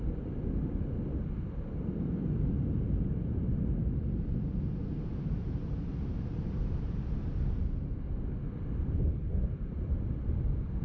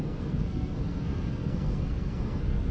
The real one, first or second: first